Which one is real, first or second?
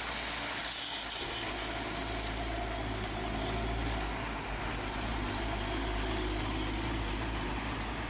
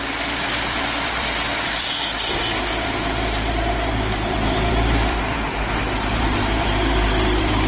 first